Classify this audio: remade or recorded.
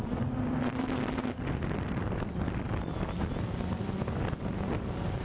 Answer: recorded